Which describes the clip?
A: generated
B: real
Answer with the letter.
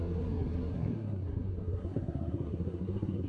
A